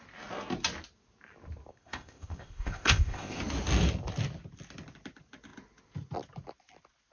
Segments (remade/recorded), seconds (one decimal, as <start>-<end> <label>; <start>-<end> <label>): 0.0-1.7 recorded; 1.7-3.4 remade; 3.4-7.1 recorded

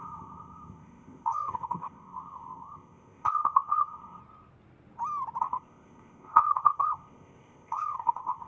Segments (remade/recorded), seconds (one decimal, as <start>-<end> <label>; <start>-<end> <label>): 0.0-4.2 remade; 4.2-5.4 recorded; 5.4-8.5 remade